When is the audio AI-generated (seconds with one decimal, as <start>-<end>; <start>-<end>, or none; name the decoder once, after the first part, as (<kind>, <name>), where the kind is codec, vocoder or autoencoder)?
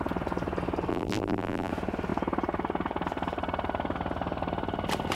0.9-1.7 (vocoder, BigVGAN v2)